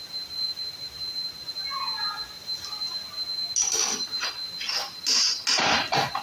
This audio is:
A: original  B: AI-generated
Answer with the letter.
A